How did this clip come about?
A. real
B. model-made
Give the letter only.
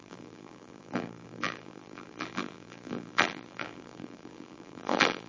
B